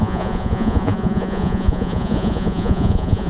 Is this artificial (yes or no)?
yes